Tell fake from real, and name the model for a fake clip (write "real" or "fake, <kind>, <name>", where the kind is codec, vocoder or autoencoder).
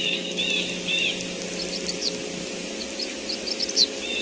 real